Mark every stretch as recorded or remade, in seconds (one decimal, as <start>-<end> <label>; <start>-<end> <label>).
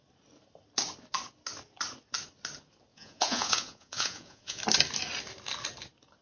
0.0-2.9 recorded; 2.9-4.6 remade; 4.6-6.2 recorded